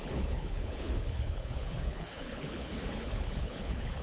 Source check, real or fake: fake